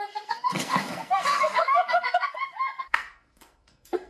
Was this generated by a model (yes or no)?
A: yes